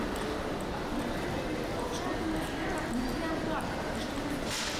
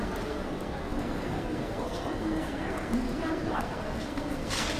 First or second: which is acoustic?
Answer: first